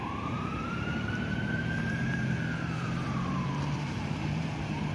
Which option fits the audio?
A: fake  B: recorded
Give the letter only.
A